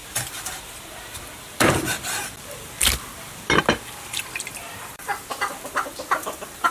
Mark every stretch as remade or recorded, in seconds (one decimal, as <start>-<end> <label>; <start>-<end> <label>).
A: 0.0-6.7 remade